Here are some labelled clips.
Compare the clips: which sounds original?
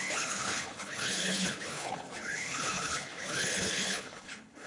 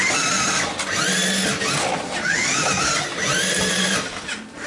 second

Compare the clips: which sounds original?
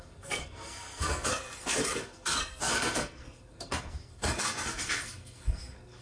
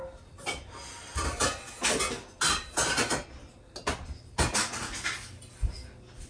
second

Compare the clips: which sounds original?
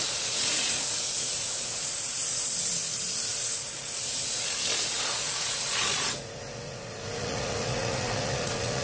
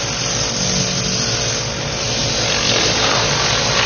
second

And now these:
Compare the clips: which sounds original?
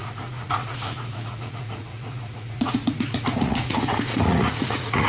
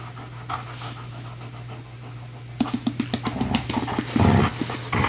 second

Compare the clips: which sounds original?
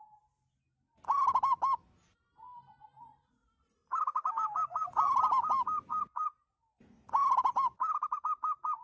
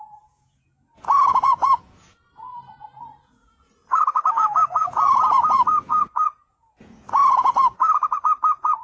first